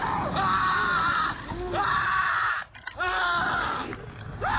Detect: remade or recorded recorded